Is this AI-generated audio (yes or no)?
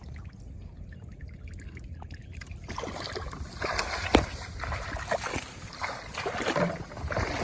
no